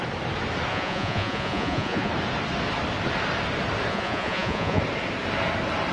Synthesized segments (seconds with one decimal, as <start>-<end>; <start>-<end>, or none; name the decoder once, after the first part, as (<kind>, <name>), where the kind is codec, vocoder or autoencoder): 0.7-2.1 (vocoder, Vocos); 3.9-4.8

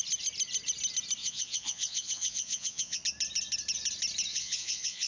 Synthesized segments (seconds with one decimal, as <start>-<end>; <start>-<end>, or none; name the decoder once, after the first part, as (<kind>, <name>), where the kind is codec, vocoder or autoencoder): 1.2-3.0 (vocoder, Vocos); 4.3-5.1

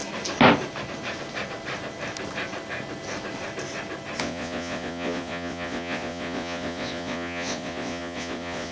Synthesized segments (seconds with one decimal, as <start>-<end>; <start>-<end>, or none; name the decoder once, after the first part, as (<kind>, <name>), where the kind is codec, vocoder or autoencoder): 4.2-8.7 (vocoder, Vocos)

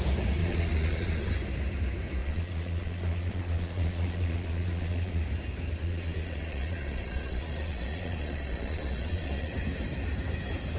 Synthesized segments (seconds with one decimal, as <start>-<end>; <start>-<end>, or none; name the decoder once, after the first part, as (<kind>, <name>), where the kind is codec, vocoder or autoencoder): 0.4-1.3 (vocoder, Vocos); 2.2-5.2; 5.8-9.5